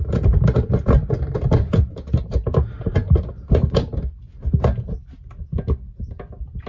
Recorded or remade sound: recorded